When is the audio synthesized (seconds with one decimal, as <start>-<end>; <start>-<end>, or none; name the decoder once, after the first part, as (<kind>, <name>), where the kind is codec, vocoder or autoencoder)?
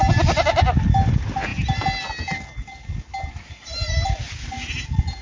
none